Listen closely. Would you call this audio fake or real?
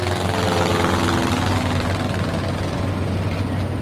real